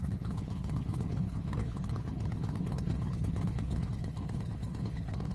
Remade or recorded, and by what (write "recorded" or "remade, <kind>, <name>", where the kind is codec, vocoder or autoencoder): remade, codec, HILCodec